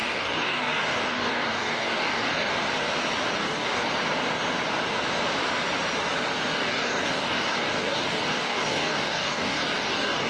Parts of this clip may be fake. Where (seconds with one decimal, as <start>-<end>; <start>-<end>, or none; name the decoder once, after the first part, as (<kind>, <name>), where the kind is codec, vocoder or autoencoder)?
0.0-2.5 (codec, DAC); 3.4-3.9; 6.5-10.3